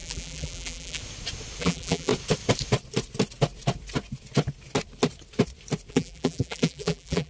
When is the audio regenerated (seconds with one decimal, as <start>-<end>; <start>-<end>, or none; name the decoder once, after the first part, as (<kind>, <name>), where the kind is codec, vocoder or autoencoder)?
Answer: 0.0-1.0 (vocoder, BigVGAN v2); 1.6-2.1; 5.9-7.3

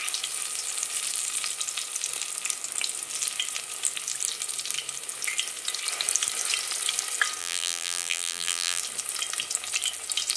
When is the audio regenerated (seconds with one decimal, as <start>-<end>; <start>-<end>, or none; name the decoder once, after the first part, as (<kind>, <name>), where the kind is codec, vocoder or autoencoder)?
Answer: 7.4-8.8 (vocoder, BigVGAN v2)

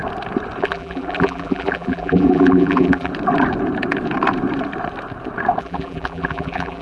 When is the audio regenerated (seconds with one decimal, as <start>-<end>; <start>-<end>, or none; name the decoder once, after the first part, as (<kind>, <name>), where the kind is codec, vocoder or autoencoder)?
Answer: 0.6-3.1 (vocoder, BigVGAN v2); 5.6-6.8